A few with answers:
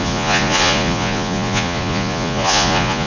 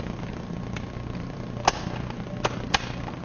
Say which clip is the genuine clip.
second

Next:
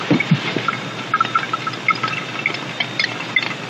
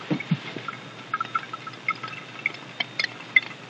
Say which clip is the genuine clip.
second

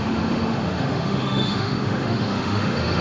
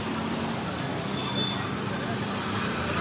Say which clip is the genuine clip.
second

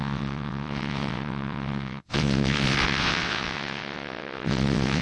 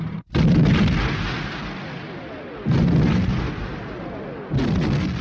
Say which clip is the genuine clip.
second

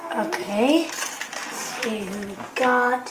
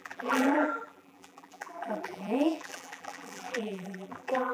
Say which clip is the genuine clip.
first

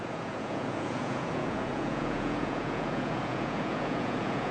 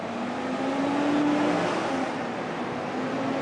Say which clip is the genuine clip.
second